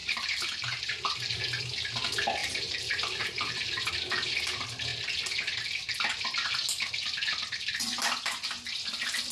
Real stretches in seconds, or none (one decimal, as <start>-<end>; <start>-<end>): 1.6-2.4; 3.9-9.3